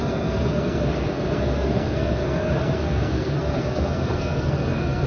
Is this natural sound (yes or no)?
no